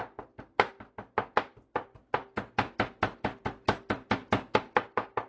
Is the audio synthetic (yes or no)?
no